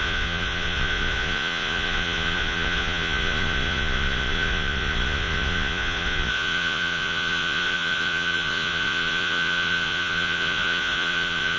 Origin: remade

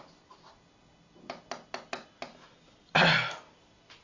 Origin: recorded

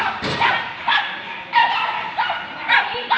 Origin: recorded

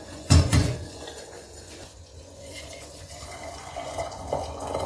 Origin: remade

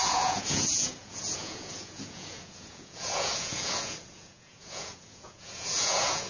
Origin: remade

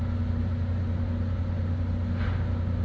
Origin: recorded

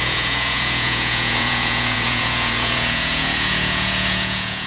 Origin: remade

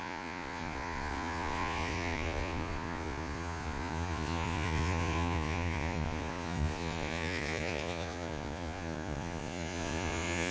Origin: remade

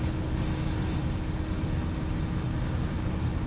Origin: recorded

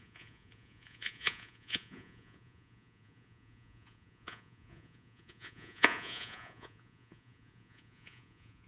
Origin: remade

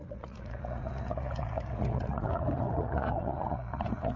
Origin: remade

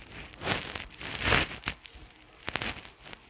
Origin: recorded